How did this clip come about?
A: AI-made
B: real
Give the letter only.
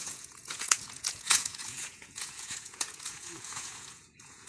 A